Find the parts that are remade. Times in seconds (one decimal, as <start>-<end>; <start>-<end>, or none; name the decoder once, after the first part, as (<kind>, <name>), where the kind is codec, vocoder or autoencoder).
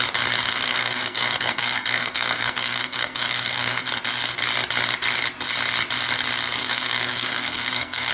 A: 0.5-3.9 (codec, SNAC); 6.6-8.1